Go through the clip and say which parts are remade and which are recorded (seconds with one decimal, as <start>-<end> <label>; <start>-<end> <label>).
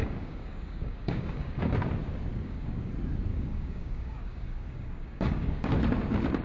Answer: 0.0-1.7 remade; 1.7-2.3 recorded; 2.3-2.9 remade; 2.9-3.3 recorded; 3.3-5.7 remade; 5.7-6.4 recorded